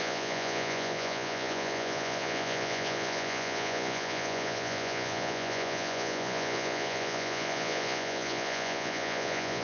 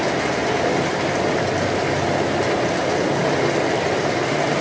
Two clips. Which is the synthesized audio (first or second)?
first